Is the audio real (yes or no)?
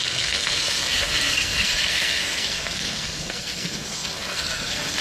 no